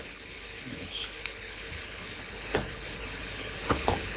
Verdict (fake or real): fake